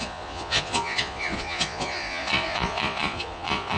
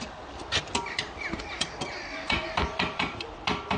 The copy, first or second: first